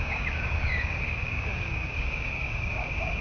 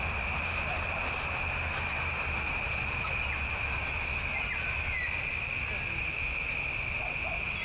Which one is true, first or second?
second